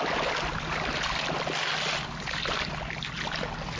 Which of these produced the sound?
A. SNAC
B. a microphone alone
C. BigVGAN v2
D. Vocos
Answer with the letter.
B